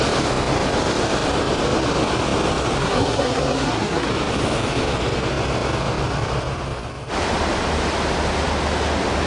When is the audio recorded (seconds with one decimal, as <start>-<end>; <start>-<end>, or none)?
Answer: 0.0-2.8; 4.1-9.3